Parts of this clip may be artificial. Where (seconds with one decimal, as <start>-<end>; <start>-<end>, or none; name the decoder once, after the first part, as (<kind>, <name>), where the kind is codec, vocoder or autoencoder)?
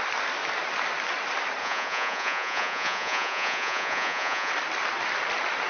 1.6-4.5 (vocoder, Vocos)